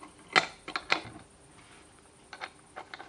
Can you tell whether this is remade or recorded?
recorded